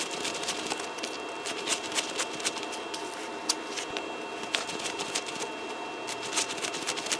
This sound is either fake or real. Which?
real